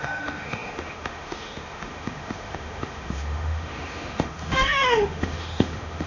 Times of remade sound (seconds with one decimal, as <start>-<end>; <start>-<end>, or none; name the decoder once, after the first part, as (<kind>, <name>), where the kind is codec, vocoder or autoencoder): 0.0-6.1 (autoencoder, DAC-VAE)